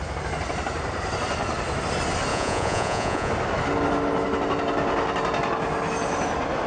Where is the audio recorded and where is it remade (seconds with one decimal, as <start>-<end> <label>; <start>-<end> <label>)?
0.0-2.3 recorded; 2.3-3.3 remade; 3.3-6.7 recorded